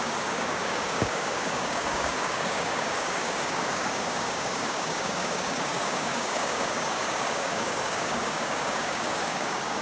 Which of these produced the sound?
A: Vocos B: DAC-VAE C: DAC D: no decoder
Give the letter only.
C